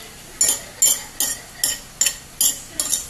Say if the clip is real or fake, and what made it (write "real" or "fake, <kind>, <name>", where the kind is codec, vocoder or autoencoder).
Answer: real